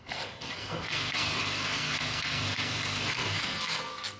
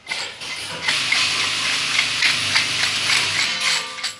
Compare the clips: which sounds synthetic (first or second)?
first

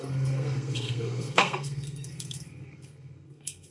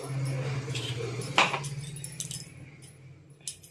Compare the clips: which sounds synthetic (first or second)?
first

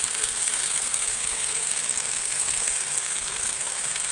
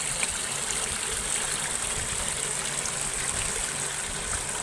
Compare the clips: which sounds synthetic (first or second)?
first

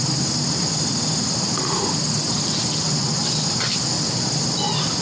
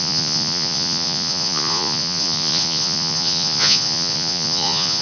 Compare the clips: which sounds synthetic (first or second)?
second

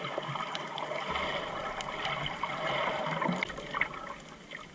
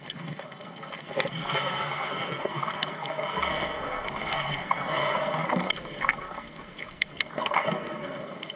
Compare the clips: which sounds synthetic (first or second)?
second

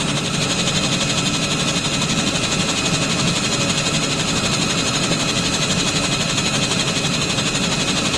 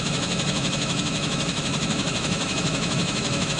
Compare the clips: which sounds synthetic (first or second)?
second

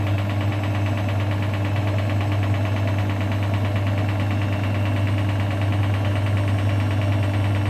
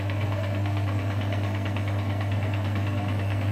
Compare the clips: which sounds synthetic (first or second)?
second